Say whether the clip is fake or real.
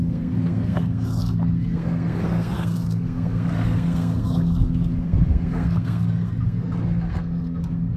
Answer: fake